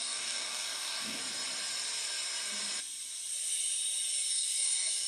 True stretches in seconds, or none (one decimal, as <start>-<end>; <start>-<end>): 1.2-4.3